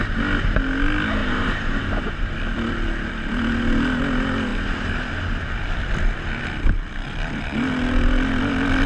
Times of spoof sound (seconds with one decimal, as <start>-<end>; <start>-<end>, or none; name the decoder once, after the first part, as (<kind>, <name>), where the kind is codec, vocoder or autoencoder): 1.2-2.3 (vocoder, BigVGAN v2)